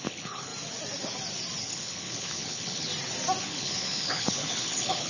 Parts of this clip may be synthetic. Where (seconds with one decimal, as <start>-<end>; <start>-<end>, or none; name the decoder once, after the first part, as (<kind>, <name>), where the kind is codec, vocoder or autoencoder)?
0.0-0.5 (codec, HILCodec); 1.6-2.9; 3.4-5.1